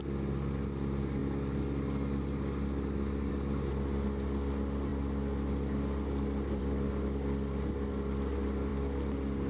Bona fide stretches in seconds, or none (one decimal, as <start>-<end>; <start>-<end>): 0.0-9.5